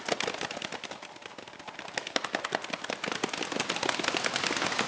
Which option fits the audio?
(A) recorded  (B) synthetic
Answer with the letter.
A